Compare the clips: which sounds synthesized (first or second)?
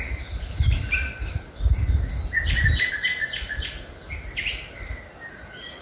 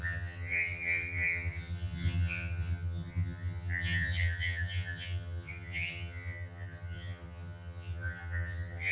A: second